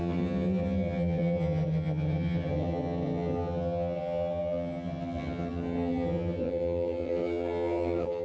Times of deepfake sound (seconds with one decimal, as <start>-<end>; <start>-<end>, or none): 0.0-8.2